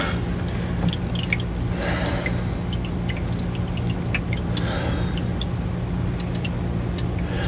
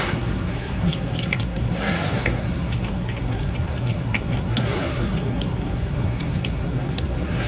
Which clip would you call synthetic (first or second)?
second